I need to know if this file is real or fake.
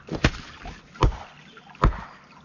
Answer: real